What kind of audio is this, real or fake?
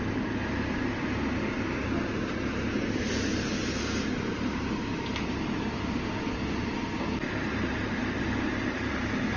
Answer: real